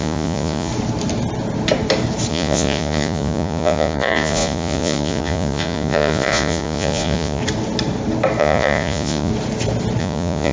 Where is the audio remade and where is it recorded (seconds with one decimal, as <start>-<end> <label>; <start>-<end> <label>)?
0.0-0.7 remade; 0.7-2.3 recorded; 2.3-7.4 remade; 7.4-8.4 recorded; 8.4-9.3 remade; 9.3-10.0 recorded; 10.0-10.5 remade